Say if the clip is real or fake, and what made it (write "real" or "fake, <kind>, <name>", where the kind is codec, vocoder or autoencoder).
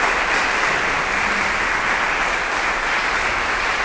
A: real